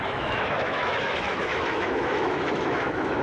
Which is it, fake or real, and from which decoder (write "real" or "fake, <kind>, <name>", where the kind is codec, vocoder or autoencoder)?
fake, autoencoder, DAC-VAE